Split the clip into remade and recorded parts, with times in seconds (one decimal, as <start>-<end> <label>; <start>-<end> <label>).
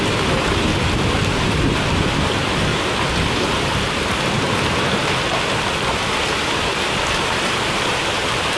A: 0.0-0.7 remade; 0.7-1.2 recorded; 1.2-2.7 remade; 2.7-3.4 recorded; 3.4-5.0 remade; 5.0-6.3 recorded; 6.3-8.6 remade